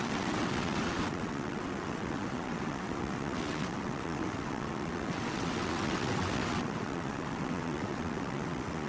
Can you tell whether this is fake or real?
fake